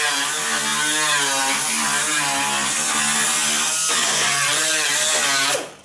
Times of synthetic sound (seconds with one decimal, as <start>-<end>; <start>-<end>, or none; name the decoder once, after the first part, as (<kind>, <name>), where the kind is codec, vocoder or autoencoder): 4.0-4.9 (vocoder, Vocos)